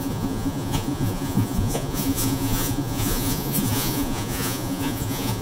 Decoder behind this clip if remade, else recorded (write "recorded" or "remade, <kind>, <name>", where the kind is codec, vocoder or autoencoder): remade, vocoder, Vocos